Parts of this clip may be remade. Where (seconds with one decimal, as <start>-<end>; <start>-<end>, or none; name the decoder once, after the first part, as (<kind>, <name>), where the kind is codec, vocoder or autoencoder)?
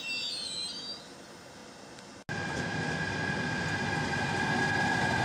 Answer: none